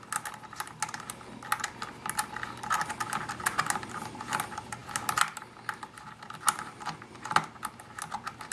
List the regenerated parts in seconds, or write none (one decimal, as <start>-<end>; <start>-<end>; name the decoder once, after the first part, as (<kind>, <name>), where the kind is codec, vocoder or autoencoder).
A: none